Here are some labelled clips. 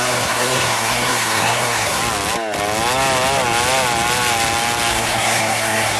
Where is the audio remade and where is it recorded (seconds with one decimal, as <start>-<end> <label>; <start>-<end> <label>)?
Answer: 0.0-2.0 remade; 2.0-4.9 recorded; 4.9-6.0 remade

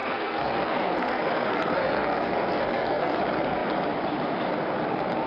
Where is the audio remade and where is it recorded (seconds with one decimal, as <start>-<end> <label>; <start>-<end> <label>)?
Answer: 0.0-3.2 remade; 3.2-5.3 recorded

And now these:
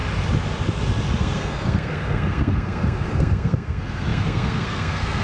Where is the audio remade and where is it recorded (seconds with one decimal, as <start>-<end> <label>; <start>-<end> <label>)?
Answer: 0.0-1.2 recorded; 1.2-5.2 remade